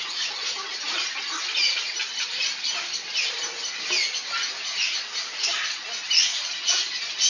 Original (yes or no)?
yes